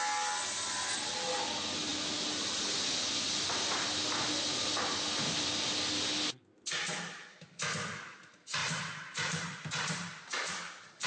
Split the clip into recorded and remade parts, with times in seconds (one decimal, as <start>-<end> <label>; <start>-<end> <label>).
0.0-8.6 recorded; 8.6-11.1 remade